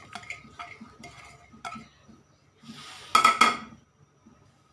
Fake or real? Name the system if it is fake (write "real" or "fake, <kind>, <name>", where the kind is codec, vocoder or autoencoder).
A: real